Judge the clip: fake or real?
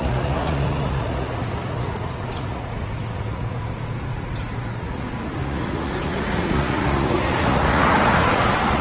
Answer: fake